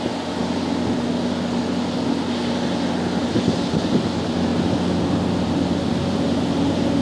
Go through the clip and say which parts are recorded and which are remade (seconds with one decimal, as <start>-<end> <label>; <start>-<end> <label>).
0.0-7.0 recorded